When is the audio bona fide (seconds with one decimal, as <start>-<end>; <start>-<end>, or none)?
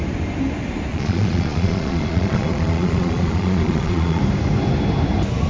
0.0-0.9; 4.2-5.5